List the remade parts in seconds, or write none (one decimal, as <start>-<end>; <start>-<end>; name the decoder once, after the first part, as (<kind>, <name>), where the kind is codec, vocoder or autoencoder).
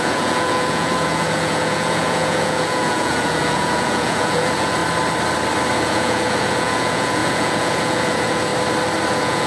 0.0-4.8 (vocoder, Vocos); 5.8-8.5; 9.1-9.5